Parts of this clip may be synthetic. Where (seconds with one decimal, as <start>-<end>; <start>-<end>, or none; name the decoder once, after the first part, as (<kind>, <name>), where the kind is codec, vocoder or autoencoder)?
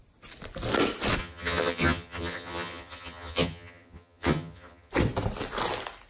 1.2-4.9 (vocoder, HiFi-GAN)